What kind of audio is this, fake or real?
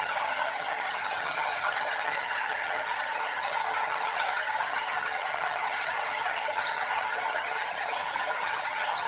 fake